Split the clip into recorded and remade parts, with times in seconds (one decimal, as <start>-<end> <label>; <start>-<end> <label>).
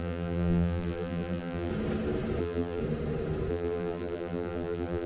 0.0-1.7 remade; 1.7-2.4 recorded; 2.4-2.8 remade; 2.8-3.5 recorded; 3.5-5.1 remade